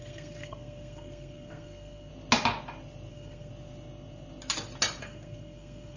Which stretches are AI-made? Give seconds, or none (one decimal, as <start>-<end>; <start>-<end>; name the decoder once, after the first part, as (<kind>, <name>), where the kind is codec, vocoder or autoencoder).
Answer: 0.0-2.1 (codec, SNAC); 3.1-3.5; 5.0-6.0

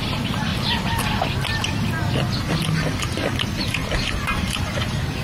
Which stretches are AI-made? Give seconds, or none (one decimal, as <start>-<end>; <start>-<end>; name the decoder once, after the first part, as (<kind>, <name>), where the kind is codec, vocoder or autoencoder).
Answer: 0.0-0.5 (vocoder, BigVGAN v2); 3.6-5.2

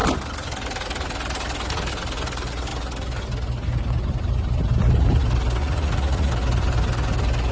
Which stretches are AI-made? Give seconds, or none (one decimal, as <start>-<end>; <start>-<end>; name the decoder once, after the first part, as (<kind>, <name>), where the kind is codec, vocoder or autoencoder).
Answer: 5.6-6.3 (vocoder, Vocos)

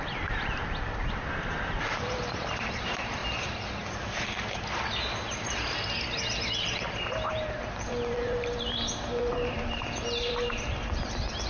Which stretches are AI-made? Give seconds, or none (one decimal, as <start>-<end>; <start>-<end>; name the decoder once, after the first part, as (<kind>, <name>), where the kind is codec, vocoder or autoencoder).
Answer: 0.0-3.2 (vocoder, BigVGAN v2); 7.3-11.5

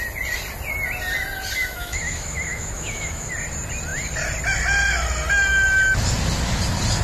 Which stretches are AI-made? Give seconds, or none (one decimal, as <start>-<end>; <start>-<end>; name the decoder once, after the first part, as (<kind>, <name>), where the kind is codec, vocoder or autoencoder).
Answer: 1.6-3.3 (autoencoder, DAC-VAE)